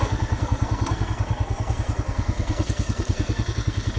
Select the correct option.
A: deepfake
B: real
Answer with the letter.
A